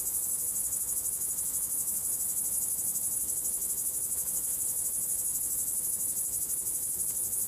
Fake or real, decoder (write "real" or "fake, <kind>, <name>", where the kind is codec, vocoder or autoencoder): fake, autoencoder, DAC-VAE